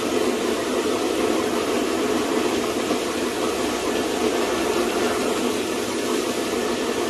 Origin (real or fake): real